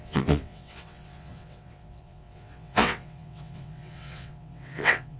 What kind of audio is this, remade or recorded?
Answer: remade